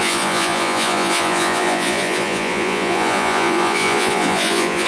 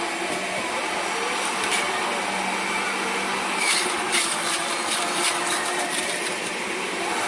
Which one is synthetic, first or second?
first